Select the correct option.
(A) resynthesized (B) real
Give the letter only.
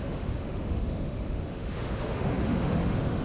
A